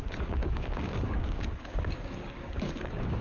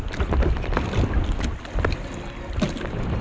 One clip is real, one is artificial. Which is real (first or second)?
second